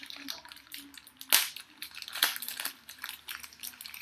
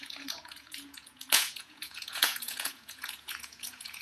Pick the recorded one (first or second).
first